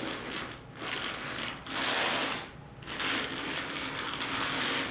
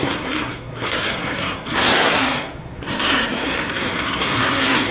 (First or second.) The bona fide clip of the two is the first